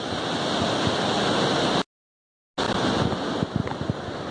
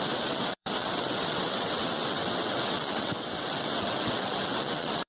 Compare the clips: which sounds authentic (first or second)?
first